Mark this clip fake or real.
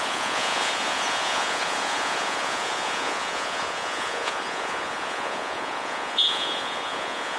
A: fake